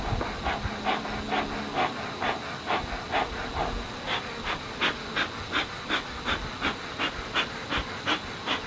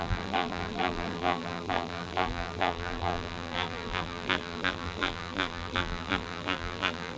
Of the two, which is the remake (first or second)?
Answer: second